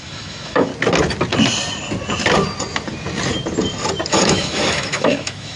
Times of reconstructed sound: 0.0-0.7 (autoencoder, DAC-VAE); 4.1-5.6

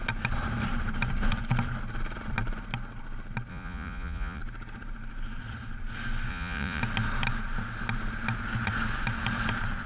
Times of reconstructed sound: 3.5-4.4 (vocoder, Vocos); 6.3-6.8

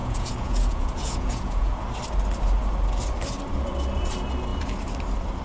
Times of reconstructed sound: 0.0-1.9 (vocoder, Vocos)

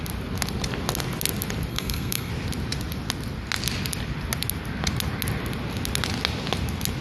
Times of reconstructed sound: 1.7-2.3 (codec, SNAC)

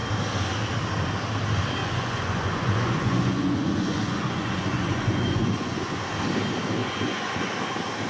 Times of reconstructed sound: 1.8-6.0 (vocoder, Vocos); 6.8-7.5

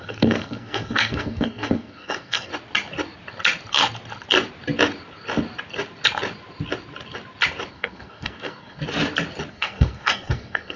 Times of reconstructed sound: 0.0-2.5 (codec, SNAC); 7.7-8.8; 9.5-10.8

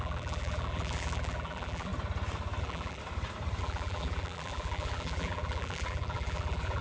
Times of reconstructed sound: 0.0-1.9 (vocoder, BigVGAN v2); 2.6-3.0; 3.6-6.8

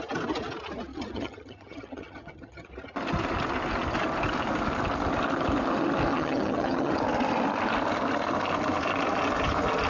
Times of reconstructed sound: 0.9-2.7 (vocoder, HiFi-GAN); 6.1-6.9